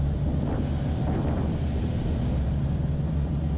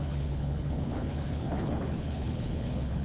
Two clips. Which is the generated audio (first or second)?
second